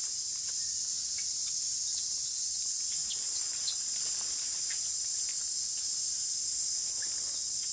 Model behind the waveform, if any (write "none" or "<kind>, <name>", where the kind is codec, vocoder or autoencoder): none